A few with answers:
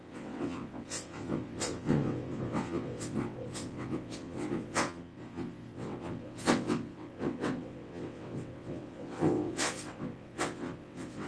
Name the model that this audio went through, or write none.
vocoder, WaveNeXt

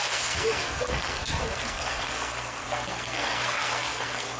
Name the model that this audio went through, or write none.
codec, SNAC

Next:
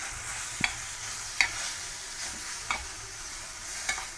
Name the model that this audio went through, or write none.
vocoder, BigVGAN v2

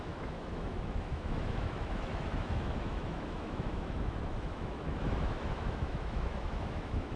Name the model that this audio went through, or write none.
autoencoder, DAC-VAE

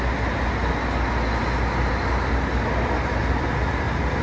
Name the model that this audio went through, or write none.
none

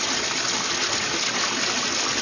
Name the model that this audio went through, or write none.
none